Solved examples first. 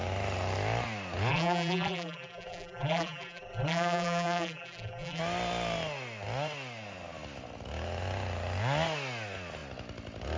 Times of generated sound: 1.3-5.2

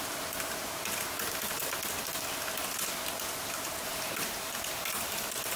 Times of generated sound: 0.0-1.6; 3.1-5.6